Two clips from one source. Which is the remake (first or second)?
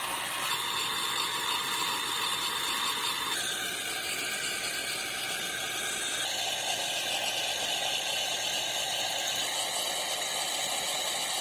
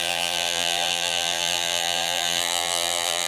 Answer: second